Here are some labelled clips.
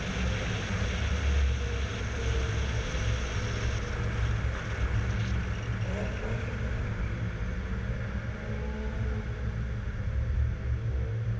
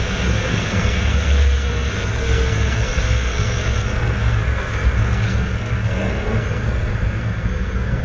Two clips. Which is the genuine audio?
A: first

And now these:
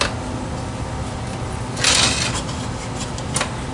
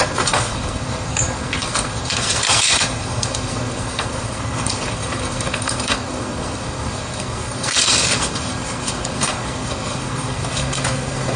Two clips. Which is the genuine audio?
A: first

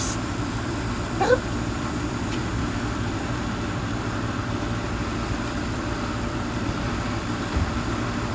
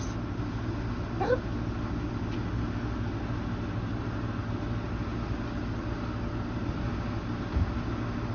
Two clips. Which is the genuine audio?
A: second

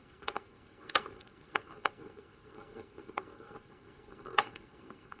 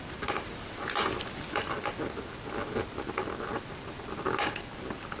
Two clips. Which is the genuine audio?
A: second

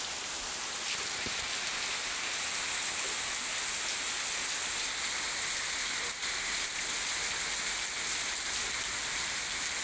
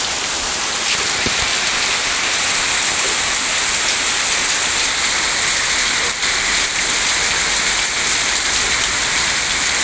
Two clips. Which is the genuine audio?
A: first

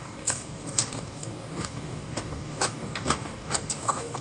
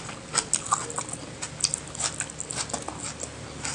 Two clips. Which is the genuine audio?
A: second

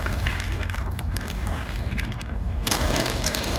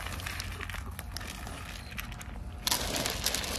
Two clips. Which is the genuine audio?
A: second